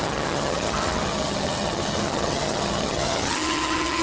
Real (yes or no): no